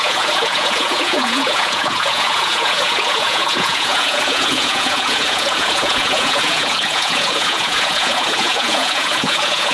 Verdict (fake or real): fake